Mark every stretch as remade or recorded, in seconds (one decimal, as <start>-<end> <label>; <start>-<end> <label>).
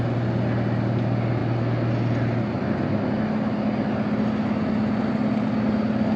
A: 0.0-6.2 recorded